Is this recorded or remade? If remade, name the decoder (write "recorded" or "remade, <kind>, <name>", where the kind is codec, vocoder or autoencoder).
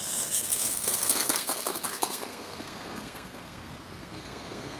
remade, codec, SNAC